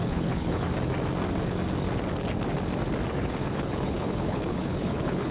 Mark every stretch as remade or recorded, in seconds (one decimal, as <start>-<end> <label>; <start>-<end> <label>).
0.0-0.7 remade; 0.7-3.1 recorded; 3.1-5.3 remade